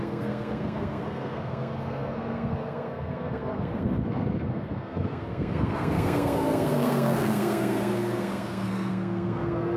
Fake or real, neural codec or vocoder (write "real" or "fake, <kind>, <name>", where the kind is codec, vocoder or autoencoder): fake, codec, SNAC